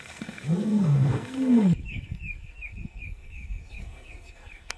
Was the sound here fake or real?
fake